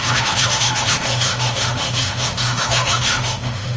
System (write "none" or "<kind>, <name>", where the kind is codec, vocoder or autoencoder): autoencoder, DAC-VAE